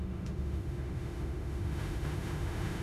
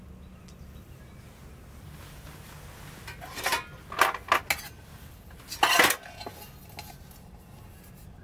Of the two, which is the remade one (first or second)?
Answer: first